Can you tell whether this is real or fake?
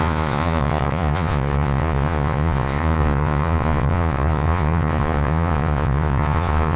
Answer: fake